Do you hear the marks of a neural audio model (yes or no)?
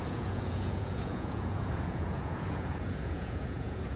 yes